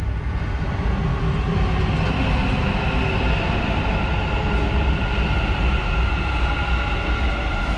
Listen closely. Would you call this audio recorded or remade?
recorded